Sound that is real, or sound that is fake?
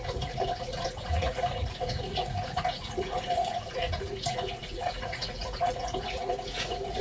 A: fake